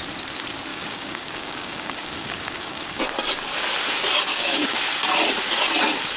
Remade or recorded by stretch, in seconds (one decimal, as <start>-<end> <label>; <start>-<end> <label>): 0.0-0.7 recorded; 0.7-3.0 remade; 3.0-4.3 recorded; 4.3-4.8 remade; 4.8-6.2 recorded